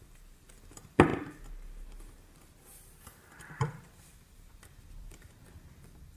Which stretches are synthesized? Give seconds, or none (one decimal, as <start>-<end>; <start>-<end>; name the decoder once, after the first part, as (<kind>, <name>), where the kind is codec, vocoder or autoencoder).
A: 0.0-1.1 (vocoder, BigVGAN v2); 3.0-6.2